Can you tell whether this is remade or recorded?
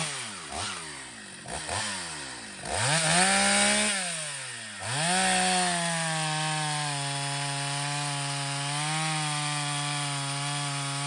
recorded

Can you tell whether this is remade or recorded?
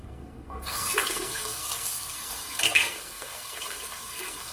remade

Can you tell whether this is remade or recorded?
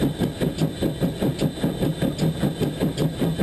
recorded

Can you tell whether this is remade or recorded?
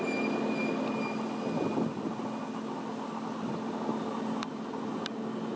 recorded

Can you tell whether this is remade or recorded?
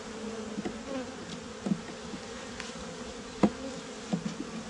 recorded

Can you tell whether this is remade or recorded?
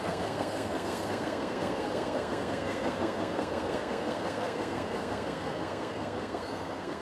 remade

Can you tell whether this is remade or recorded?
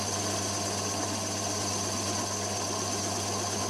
recorded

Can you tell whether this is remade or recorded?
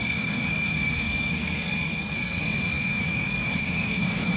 remade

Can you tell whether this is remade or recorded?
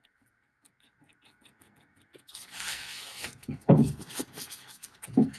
remade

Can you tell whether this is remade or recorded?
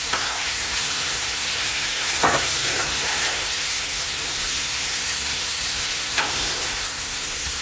remade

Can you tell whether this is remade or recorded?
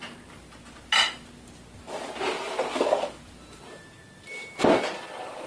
recorded